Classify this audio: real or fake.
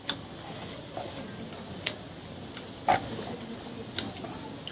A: real